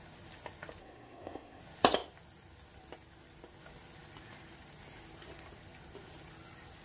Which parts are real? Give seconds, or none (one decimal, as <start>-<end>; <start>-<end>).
0.0-0.8; 1.6-6.8